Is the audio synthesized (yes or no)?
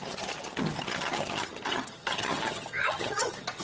yes